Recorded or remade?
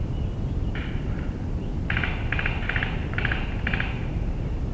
remade